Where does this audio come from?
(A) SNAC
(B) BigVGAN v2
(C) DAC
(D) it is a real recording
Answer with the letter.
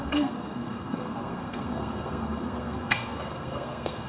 A